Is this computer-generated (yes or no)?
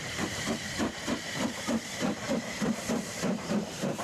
yes